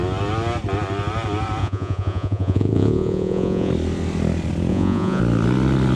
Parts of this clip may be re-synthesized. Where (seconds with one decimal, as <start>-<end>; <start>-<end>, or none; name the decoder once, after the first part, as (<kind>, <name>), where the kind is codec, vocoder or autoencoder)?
1.6-3.7 (vocoder, Vocos); 4.7-5.2